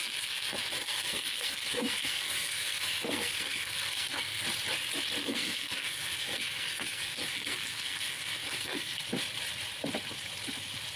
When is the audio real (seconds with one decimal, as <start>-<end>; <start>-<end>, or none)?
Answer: 4.4-5.2; 9.0-11.0